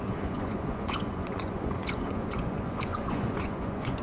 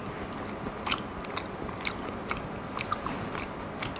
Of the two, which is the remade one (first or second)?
first